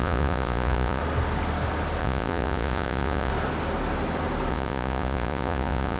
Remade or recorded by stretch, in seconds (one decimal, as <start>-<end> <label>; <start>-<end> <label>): 0.0-1.0 remade; 1.0-2.0 recorded; 2.0-3.3 remade; 3.3-4.5 recorded; 4.5-6.0 remade